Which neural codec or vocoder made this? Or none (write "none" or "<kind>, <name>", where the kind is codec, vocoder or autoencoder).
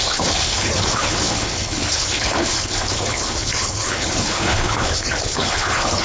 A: codec, HILCodec